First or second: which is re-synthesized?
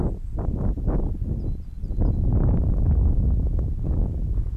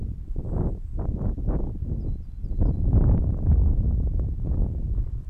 second